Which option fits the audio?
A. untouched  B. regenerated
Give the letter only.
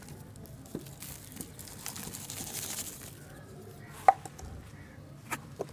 A